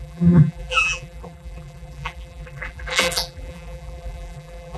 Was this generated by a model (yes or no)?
yes